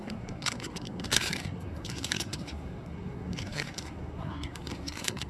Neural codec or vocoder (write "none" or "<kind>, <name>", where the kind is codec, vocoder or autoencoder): codec, SNAC